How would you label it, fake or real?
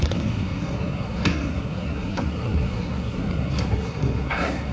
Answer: fake